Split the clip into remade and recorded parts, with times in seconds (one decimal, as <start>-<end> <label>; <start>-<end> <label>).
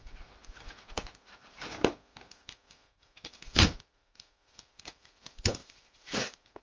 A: 0.0-6.6 remade